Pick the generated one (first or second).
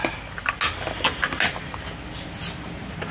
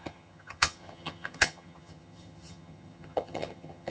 second